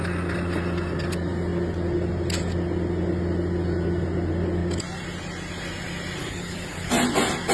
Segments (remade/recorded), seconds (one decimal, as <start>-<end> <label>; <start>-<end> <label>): 0.0-6.2 recorded; 6.2-6.9 remade; 6.9-7.5 recorded